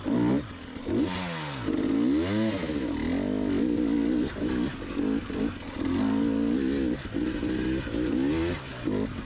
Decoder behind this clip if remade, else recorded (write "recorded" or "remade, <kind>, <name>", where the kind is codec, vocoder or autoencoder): recorded